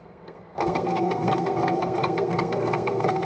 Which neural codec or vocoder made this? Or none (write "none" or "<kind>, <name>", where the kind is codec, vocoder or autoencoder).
codec, SNAC